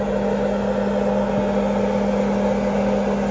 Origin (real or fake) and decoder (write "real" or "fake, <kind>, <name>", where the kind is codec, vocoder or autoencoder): real